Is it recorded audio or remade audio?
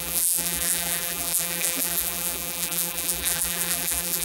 remade